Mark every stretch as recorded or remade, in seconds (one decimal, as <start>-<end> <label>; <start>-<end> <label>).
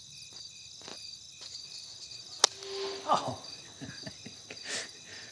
0.0-5.3 recorded